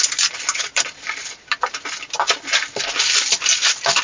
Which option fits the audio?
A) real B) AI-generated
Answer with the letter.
A